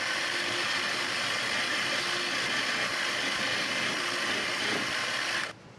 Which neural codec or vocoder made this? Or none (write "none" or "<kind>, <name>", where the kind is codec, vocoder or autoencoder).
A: none